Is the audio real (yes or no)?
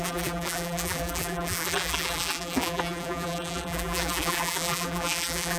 no